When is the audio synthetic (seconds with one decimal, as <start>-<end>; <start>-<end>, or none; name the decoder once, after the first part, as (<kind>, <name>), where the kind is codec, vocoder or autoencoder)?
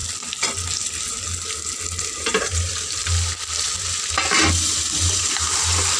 2.0-2.7 (vocoder, BigVGAN v2); 5.2-6.0